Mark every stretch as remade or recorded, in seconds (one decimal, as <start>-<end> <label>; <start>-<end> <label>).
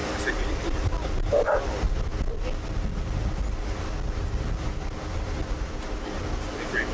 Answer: 0.0-1.6 remade; 1.6-6.9 recorded